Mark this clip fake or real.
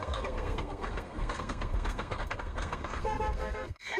fake